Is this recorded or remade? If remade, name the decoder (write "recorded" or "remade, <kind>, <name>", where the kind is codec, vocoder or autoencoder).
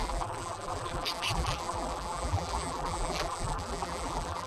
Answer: remade, vocoder, BigVGAN v2